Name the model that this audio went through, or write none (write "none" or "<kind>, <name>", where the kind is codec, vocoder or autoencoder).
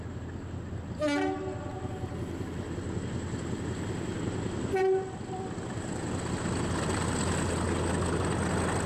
none